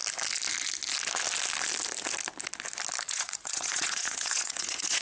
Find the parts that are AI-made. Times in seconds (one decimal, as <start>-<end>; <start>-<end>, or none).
3.0-5.0